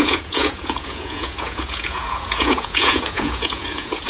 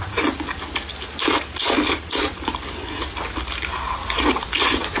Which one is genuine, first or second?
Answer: second